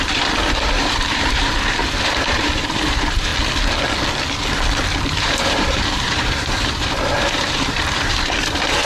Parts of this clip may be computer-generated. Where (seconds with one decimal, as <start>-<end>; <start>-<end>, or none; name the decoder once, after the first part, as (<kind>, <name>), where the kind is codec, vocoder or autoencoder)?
0.0-3.3 (vocoder, BigVGAN v2); 5.0-8.9